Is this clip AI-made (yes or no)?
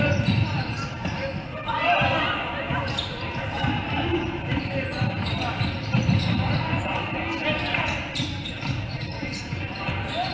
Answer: no